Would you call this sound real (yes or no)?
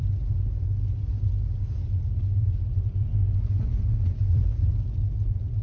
yes